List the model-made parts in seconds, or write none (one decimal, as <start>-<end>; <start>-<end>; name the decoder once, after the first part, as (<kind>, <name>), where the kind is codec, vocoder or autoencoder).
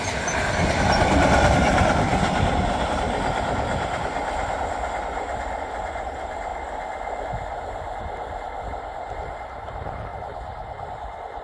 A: 0.0-6.5 (vocoder, BigVGAN v2); 8.6-10.1; 10.9-11.4